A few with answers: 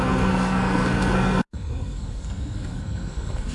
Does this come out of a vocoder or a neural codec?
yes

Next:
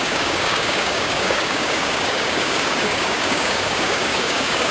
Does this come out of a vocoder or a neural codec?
yes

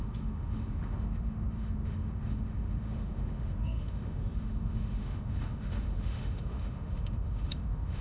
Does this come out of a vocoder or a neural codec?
yes